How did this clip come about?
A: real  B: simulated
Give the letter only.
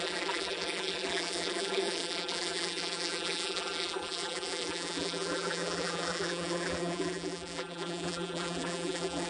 B